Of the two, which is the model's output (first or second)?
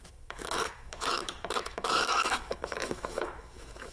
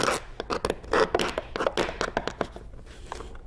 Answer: first